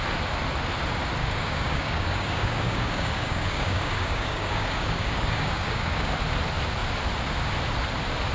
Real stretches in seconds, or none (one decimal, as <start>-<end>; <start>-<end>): 0.0-1.2; 6.1-8.3